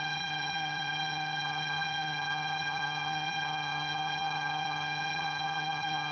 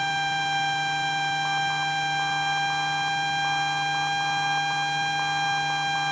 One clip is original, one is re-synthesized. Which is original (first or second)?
second